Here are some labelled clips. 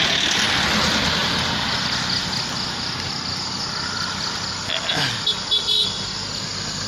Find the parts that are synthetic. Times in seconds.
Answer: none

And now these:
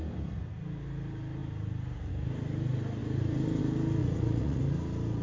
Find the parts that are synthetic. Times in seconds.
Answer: 4.0-4.6

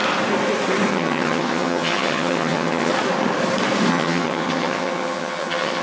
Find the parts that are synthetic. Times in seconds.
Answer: 0.9-2.9; 3.9-5.8

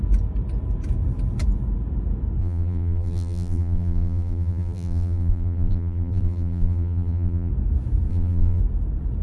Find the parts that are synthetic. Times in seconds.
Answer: 2.4-7.5; 8.1-8.6

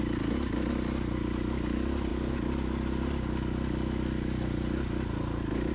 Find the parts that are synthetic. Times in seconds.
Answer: none

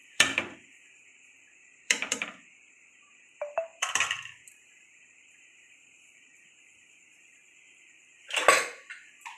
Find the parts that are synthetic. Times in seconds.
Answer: 0.0-2.7; 3.7-6.2